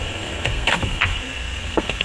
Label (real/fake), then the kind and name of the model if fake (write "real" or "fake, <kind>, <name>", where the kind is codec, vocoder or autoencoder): fake, codec, SNAC